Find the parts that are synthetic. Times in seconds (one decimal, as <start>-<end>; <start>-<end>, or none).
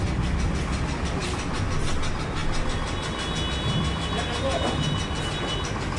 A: none